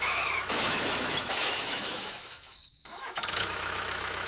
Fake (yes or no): yes